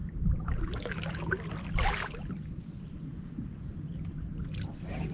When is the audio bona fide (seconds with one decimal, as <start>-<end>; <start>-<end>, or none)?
0.0-3.1; 3.7-5.1